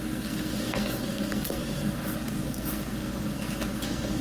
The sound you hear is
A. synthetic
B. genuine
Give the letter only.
A